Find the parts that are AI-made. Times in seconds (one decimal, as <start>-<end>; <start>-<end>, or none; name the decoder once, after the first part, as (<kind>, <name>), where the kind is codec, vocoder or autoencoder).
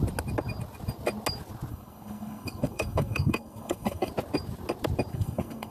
1.7-4.1 (codec, SNAC); 5.1-5.7